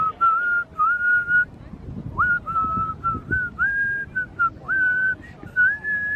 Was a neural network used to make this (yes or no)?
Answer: no